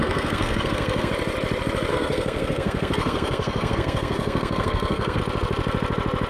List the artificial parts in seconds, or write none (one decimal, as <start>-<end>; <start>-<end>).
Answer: 0.0-1.1; 1.9-5.2